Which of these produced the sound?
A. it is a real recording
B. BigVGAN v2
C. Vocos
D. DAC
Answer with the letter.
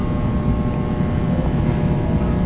A